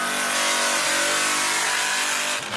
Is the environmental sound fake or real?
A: real